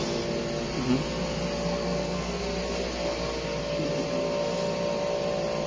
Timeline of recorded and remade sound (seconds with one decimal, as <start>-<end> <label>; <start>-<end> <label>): 0.0-1.7 recorded; 1.7-2.4 remade; 2.4-5.7 recorded